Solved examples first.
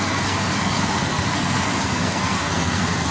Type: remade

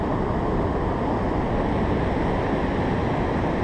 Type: recorded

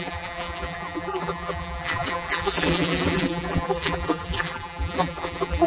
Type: remade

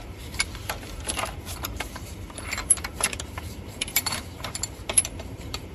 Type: remade